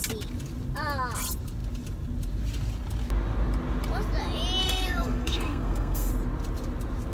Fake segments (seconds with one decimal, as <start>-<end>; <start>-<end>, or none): 4.6-6.1